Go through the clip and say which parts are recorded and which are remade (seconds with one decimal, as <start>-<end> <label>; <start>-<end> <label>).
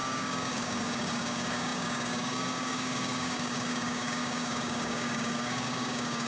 0.0-6.3 remade